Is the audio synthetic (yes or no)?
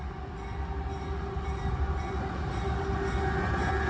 no